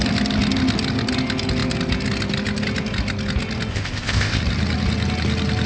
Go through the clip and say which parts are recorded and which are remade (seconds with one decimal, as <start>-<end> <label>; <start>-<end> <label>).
0.0-3.7 recorded; 3.7-4.4 remade; 4.4-5.7 recorded